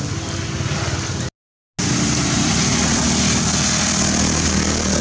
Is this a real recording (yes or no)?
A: yes